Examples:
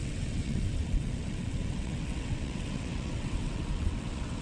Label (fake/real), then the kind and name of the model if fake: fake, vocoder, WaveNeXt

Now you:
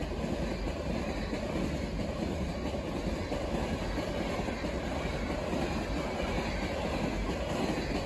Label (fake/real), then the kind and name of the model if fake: real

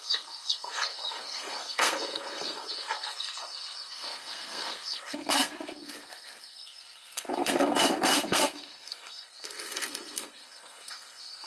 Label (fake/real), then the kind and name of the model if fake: fake, codec, SNAC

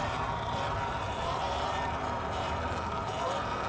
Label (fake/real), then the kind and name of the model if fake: fake, vocoder, BigVGAN v2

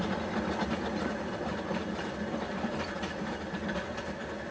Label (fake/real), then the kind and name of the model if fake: real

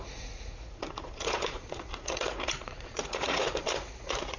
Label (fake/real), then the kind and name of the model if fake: fake, vocoder, Vocos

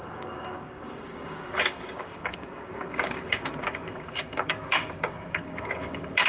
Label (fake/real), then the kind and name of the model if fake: fake, codec, DAC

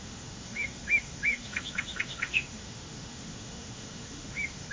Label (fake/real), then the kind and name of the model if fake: fake, autoencoder, DAC-VAE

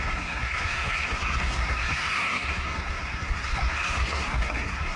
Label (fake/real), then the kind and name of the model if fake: fake, codec, SNAC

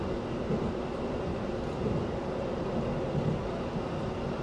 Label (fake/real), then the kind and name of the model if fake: real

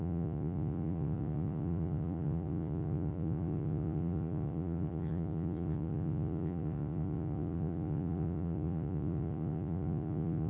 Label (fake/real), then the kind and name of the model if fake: fake, vocoder, Vocos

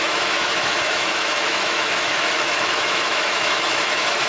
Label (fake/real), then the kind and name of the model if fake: fake, autoencoder, DAC-VAE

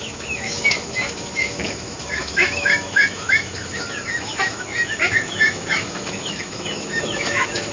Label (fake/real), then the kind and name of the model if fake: fake, autoencoder, DAC-VAE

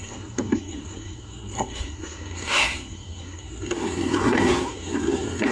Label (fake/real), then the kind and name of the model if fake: fake, codec, SNAC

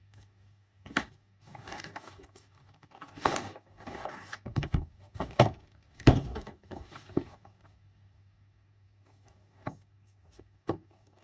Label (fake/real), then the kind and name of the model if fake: fake, codec, DAC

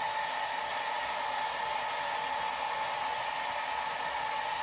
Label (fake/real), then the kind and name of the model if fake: real